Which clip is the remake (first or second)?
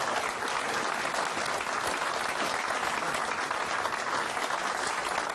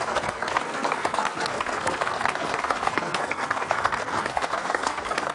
second